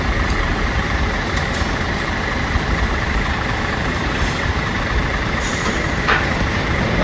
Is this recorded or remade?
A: remade